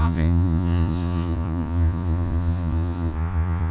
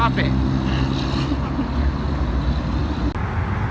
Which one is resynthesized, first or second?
first